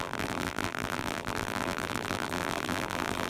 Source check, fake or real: fake